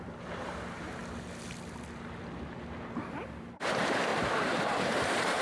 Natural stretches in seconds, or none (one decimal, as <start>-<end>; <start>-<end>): 1.0-3.1